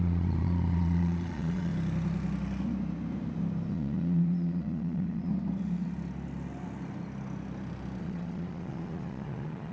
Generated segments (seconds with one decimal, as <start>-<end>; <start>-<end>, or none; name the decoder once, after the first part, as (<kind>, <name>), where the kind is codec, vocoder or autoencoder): 0.0-1.7 (vocoder, Vocos); 3.7-5.3; 8.0-9.7